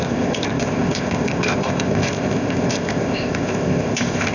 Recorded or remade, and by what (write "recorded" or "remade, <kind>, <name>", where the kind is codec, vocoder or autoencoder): remade, codec, ZipCodec